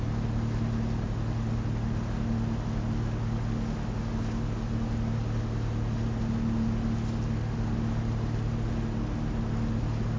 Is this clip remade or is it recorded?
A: recorded